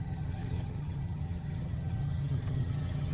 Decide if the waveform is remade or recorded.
remade